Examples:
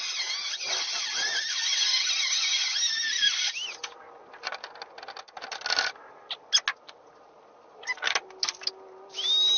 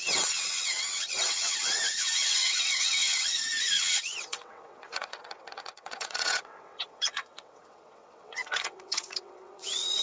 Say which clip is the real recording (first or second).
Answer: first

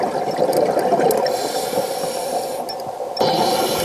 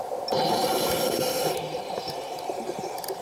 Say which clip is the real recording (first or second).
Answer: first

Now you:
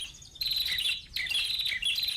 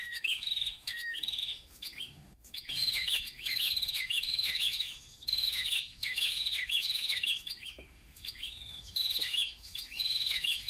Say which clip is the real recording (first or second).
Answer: first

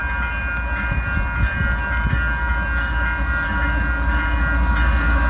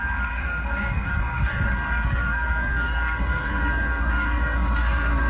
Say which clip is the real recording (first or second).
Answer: first